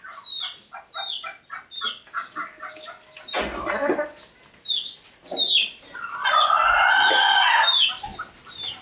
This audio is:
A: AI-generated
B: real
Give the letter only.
B